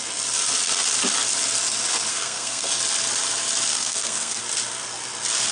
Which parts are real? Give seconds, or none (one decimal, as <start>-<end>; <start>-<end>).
0.0-2.1; 2.7-3.7; 4.4-5.5